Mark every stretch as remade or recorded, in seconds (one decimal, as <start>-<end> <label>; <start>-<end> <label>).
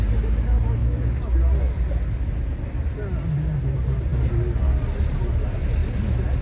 0.0-0.8 recorded; 0.8-1.3 remade; 1.3-6.4 recorded